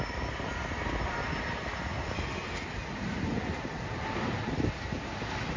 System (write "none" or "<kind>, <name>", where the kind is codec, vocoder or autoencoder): none